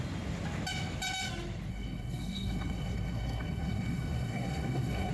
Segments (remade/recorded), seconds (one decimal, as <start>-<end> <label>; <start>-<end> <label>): 0.0-1.7 recorded; 1.7-5.1 remade